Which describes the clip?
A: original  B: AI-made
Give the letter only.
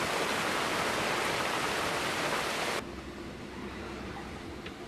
A